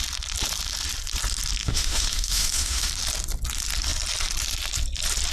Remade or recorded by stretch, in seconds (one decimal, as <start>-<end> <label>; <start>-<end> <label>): 0.0-1.6 recorded; 1.6-2.9 remade; 2.9-5.3 recorded